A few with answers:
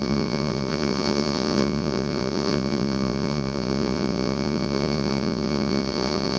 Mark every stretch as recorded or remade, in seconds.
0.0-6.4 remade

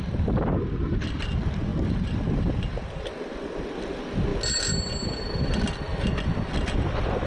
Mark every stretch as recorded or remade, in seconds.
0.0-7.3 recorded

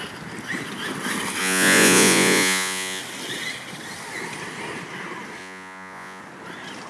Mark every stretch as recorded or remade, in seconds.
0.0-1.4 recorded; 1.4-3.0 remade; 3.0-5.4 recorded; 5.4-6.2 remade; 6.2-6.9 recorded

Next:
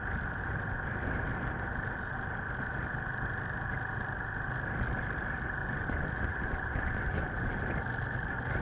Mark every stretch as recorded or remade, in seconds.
0.0-5.6 recorded; 5.6-7.5 remade; 7.5-8.6 recorded

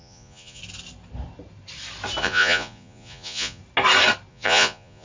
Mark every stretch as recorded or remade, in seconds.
0.0-0.6 remade; 0.6-2.2 recorded; 2.2-3.6 remade; 3.6-4.3 recorded; 4.3-5.0 remade